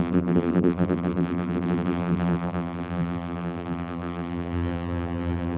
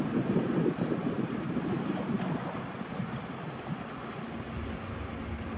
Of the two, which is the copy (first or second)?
first